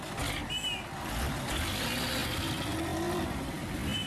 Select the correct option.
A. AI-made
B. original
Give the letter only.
B